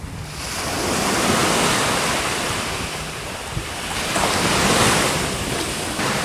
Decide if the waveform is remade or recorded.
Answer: remade